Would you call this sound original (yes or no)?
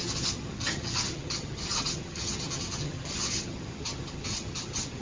no